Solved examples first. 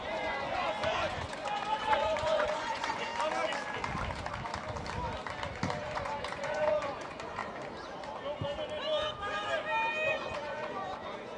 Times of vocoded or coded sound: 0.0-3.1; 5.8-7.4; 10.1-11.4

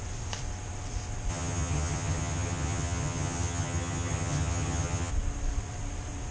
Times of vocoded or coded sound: 1.3-5.1

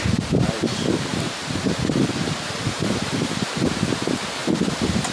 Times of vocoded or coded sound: 1.1-3.7; 4.4-5.1

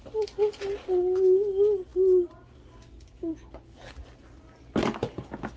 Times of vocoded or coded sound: none

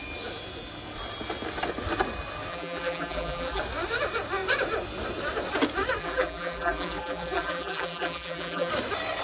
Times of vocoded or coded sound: 2.5-3.6; 6.0-8.7

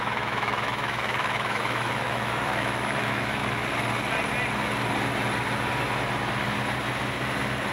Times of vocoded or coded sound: 0.0-3.4